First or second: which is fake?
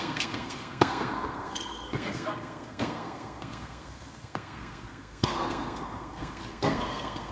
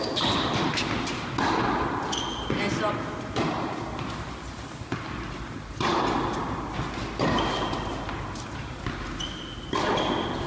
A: first